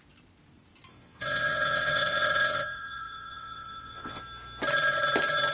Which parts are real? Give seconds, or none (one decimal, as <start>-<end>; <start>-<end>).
0.0-0.9; 4.2-5.5